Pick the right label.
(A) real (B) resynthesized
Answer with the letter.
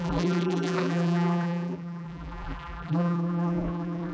B